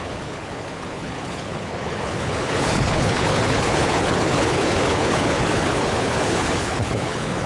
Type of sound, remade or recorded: remade